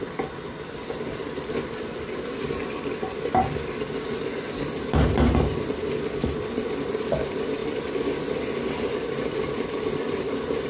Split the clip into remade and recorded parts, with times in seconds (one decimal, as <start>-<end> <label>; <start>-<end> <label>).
0.0-10.7 recorded